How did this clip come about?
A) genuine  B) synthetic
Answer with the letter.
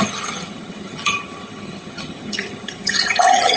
B